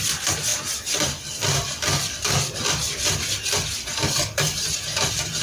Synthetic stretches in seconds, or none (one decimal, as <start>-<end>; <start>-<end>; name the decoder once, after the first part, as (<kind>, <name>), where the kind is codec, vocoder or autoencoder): 0.5-3.6 (vocoder, BigVGAN v2)